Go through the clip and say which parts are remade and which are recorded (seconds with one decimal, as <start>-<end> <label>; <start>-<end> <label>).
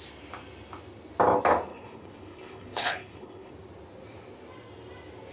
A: 0.0-1.7 recorded; 1.7-3.5 remade; 3.5-5.3 recorded